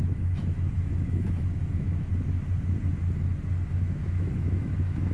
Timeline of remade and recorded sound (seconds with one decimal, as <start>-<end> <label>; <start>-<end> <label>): 0.0-2.1 remade; 2.1-3.7 recorded; 3.7-5.1 remade